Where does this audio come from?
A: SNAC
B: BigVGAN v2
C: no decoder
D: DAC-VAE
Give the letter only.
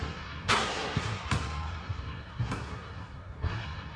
A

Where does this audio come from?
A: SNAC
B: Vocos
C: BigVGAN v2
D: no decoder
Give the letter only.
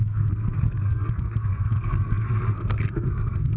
A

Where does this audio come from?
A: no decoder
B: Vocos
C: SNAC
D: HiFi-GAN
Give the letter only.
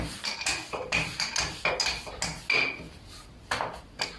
A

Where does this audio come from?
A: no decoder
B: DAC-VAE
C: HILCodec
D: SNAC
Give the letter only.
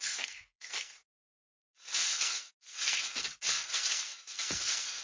D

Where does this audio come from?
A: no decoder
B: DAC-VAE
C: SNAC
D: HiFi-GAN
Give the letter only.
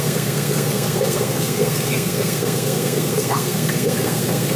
C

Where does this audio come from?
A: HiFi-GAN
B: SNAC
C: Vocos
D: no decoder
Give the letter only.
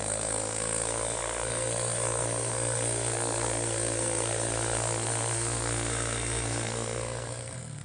B